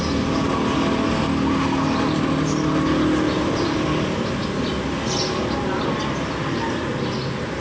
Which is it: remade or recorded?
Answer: recorded